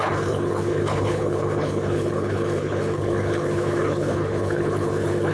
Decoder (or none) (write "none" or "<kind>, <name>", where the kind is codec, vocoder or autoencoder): codec, HILCodec